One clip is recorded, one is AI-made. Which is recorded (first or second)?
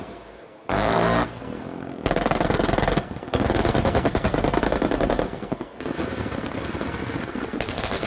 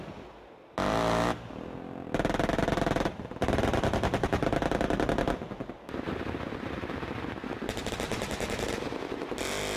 second